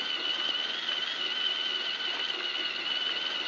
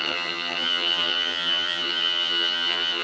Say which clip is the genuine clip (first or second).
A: first